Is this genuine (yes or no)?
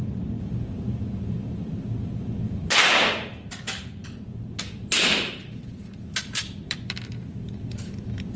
no